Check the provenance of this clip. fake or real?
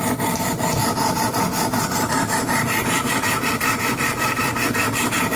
fake